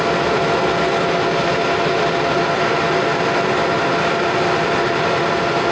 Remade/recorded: recorded